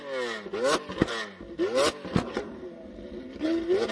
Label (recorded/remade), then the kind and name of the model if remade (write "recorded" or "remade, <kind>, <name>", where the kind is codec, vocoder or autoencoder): recorded